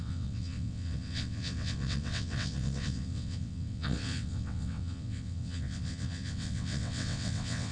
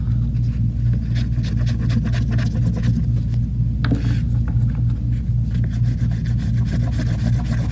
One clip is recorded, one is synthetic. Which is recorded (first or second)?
second